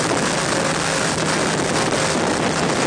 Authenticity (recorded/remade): recorded